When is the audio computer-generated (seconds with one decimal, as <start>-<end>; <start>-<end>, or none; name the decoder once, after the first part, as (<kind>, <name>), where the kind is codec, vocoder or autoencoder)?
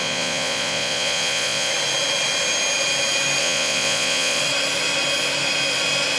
0.0-1.7 (vocoder, Vocos); 3.4-4.4